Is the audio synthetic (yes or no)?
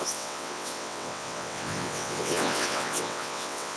yes